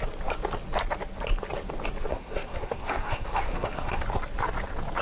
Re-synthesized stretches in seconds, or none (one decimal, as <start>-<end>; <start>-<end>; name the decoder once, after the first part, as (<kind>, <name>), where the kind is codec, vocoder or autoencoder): 2.1-4.0 (codec, SNAC)